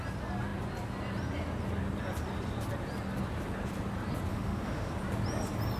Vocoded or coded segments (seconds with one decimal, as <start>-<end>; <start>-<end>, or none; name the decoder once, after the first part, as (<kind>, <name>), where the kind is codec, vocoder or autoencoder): 4.3-4.9 (autoencoder, DAC-VAE)